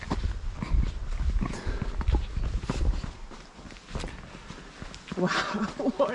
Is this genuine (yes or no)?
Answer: yes